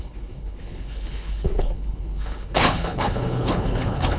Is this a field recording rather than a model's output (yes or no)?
no